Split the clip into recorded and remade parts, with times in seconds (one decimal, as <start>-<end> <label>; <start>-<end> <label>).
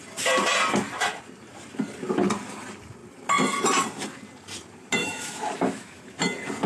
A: 0.0-5.0 recorded; 5.0-6.0 remade; 6.0-6.7 recorded